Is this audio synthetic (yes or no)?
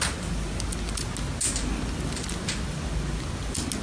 no